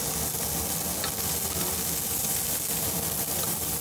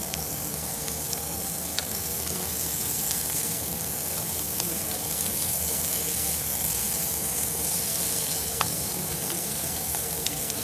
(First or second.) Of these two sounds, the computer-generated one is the second